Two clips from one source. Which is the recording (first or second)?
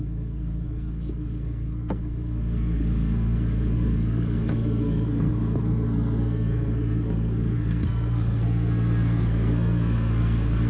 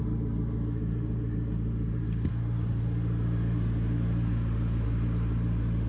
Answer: second